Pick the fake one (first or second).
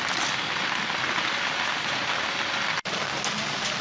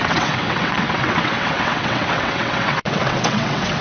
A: second